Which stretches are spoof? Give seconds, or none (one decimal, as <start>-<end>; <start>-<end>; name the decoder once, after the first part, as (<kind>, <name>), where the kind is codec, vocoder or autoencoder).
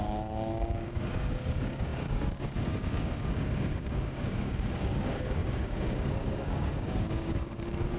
0.0-8.0 (codec, DAC)